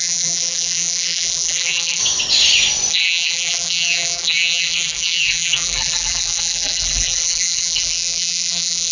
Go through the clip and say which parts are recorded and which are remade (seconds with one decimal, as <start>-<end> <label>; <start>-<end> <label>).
0.0-2.0 remade; 2.0-2.9 recorded; 2.9-8.9 remade

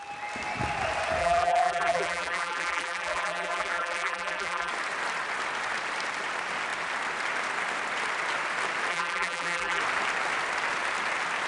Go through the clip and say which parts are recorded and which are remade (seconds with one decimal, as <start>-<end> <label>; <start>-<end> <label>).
0.0-1.2 recorded; 1.2-4.7 remade; 4.7-8.9 recorded; 8.9-9.8 remade; 9.8-11.5 recorded

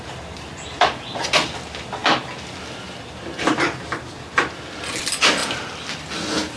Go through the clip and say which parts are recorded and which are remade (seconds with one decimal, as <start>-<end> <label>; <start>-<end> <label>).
0.0-6.6 recorded

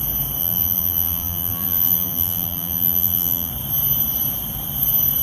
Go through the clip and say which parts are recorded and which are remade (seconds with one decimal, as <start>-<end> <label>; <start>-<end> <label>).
0.0-0.4 recorded; 0.4-3.5 remade; 3.5-5.2 recorded